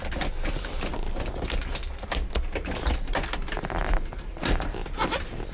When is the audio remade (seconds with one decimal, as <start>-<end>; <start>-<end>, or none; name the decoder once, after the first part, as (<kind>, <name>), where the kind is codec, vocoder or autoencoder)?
none